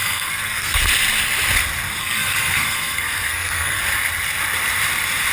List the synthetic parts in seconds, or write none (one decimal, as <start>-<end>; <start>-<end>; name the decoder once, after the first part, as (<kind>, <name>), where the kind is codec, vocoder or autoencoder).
0.0-0.8 (codec, SNAC); 2.0-3.8